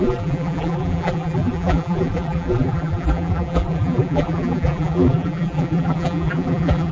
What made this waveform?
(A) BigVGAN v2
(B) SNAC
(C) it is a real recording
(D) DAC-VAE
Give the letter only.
A